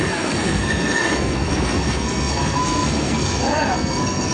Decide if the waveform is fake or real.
fake